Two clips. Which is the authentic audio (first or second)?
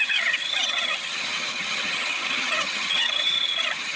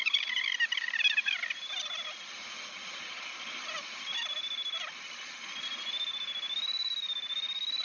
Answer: second